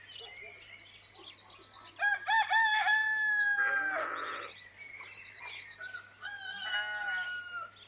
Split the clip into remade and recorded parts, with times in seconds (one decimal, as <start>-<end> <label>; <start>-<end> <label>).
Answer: 0.0-4.3 recorded; 4.3-5.4 remade; 5.4-7.9 recorded